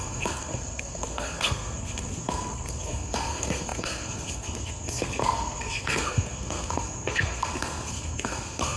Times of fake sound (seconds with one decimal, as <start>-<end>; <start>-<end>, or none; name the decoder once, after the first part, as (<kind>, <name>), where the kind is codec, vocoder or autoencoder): 0.0-8.8 (codec, SNAC)